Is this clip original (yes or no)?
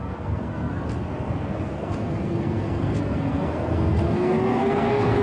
no